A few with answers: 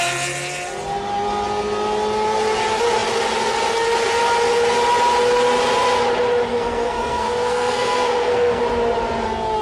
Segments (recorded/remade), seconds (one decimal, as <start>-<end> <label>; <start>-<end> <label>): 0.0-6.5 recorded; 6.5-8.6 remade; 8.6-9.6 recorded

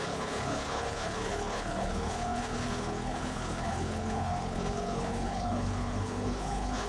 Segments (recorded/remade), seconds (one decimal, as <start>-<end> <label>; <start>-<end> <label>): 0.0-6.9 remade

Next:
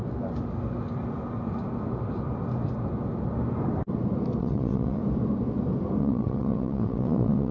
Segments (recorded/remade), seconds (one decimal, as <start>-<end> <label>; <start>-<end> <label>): 0.0-4.4 recorded; 4.4-5.0 remade; 5.0-6.0 recorded; 6.0-7.5 remade

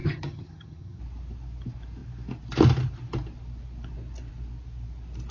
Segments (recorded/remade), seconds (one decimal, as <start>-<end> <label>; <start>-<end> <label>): 0.0-1.0 remade; 1.0-5.3 recorded

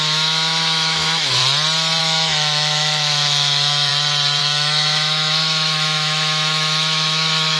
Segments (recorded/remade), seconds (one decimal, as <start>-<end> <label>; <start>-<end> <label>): 0.0-1.4 remade; 1.4-2.0 recorded; 2.0-3.9 remade; 3.9-4.4 recorded; 4.4-7.6 remade

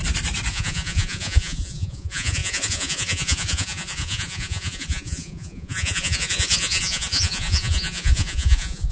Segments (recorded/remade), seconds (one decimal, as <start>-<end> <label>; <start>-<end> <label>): 0.0-0.5 recorded; 0.5-8.9 remade